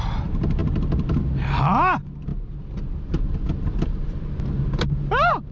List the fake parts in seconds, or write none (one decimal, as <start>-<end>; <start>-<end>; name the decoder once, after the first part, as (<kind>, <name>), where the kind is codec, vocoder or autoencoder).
none